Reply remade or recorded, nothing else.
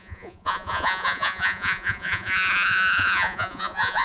remade